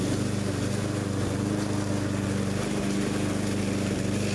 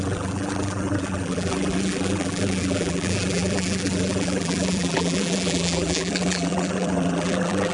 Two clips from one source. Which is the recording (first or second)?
first